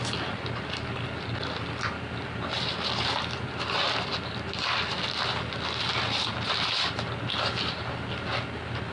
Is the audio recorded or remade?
recorded